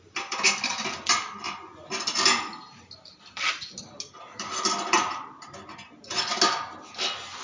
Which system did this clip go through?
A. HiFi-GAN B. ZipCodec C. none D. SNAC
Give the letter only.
C